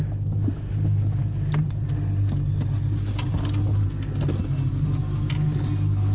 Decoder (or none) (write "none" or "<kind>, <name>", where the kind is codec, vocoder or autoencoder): none